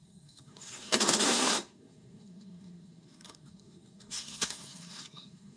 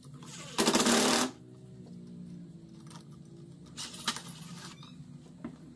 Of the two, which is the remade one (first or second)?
first